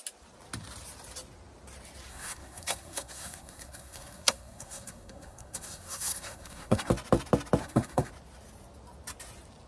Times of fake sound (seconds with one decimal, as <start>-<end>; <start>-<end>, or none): 2.1-6.9; 7.6-8.1